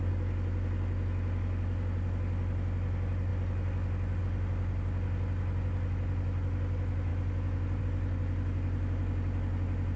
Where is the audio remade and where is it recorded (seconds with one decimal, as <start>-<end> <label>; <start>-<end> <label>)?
0.0-10.0 recorded